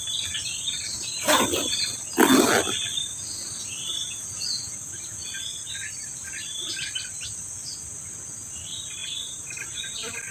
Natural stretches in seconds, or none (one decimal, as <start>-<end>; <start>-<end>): 0.0-3.0; 3.9-6.8; 7.9-10.3